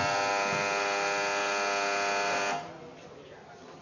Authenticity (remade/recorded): recorded